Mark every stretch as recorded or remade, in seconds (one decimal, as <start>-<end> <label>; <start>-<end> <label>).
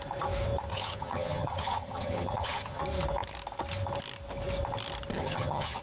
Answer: 0.0-0.7 recorded; 0.7-2.8 remade; 2.8-5.1 recorded; 5.1-5.8 remade